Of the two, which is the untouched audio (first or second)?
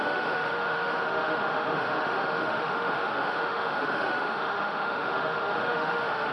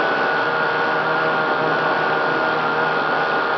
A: second